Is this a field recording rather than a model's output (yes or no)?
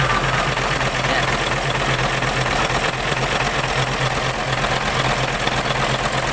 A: yes